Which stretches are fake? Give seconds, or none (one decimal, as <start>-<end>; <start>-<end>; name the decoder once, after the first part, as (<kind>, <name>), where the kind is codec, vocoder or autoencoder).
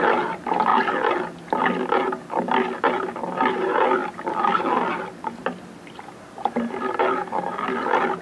none